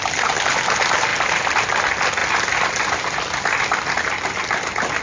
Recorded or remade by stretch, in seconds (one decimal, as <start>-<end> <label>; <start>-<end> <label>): 0.0-5.0 recorded

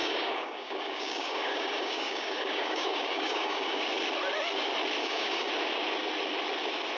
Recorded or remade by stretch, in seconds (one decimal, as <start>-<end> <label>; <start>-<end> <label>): 0.0-3.8 remade; 3.8-5.0 recorded; 5.0-5.5 remade; 5.5-7.0 recorded